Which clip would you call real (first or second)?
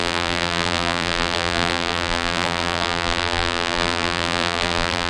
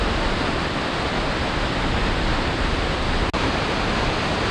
second